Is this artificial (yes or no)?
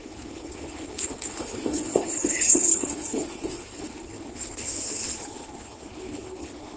yes